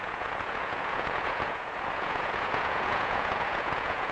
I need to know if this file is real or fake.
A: fake